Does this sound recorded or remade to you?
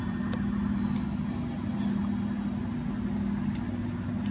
recorded